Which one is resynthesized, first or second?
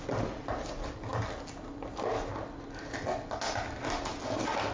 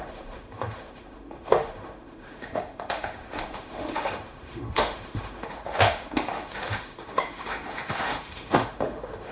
second